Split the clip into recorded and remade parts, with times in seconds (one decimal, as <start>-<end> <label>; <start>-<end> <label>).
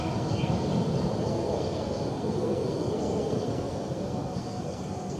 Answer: 0.0-0.7 remade; 0.7-1.2 recorded; 1.2-5.2 remade